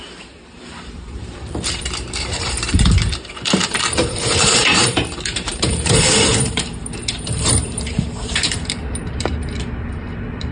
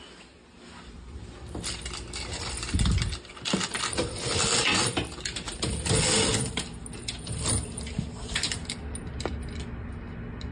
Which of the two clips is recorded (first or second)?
second